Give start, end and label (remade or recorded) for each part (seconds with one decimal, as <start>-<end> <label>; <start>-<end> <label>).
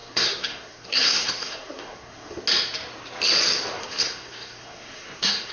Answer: 0.0-2.4 remade; 2.4-3.8 recorded; 3.8-5.5 remade